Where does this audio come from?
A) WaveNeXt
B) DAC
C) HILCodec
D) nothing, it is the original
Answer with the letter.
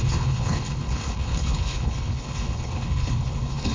C